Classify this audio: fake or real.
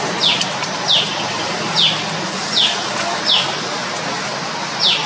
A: real